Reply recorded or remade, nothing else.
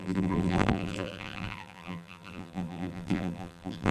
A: remade